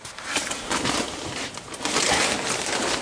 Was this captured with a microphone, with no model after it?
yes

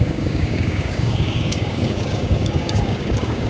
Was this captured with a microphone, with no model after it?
no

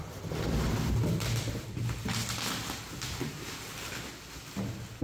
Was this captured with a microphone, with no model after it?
yes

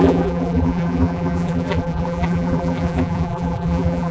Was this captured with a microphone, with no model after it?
no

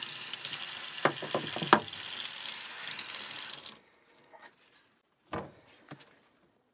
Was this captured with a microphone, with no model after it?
yes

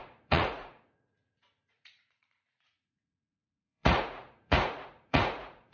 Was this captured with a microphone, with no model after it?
no